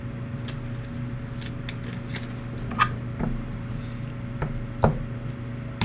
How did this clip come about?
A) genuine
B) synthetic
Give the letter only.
A